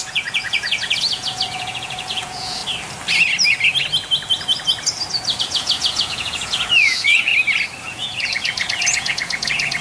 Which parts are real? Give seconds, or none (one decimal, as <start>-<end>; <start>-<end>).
2.6-5.4; 7.3-7.8